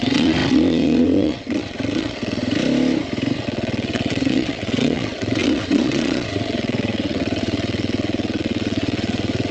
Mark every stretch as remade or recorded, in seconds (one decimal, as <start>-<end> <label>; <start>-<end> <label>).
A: 0.0-2.4 remade; 2.4-3.4 recorded; 3.4-9.5 remade